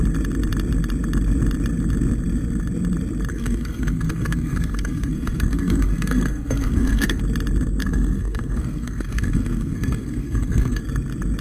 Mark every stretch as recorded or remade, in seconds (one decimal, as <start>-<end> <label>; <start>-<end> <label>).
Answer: 0.0-3.3 recorded; 3.3-7.2 remade; 7.2-7.8 recorded; 7.8-10.8 remade; 10.8-11.4 recorded